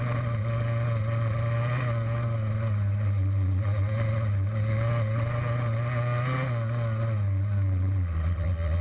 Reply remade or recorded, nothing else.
recorded